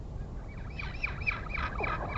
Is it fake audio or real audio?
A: real